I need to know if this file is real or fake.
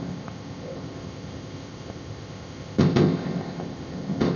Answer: fake